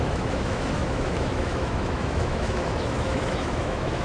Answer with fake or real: fake